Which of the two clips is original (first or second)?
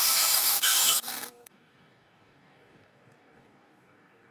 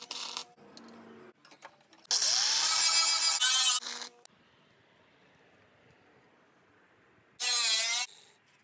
second